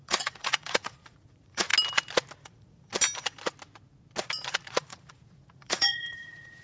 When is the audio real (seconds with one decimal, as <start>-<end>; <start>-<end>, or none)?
1.7-2.4; 2.9-4.8